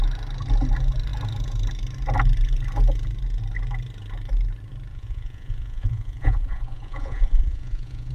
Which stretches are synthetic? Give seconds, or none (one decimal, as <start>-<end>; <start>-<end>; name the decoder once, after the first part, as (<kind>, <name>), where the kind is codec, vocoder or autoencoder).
4.9-8.1 (vocoder, Vocos)